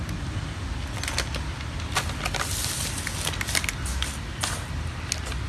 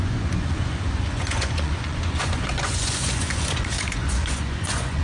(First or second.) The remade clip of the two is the second